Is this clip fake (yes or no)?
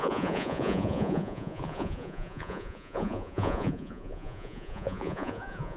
yes